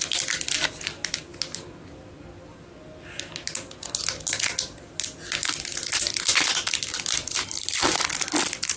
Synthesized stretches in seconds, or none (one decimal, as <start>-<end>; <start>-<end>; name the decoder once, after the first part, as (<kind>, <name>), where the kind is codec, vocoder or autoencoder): none